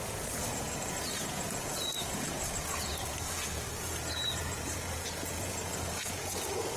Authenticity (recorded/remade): remade